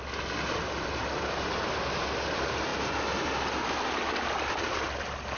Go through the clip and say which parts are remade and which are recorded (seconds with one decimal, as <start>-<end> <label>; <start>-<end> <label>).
0.0-5.4 recorded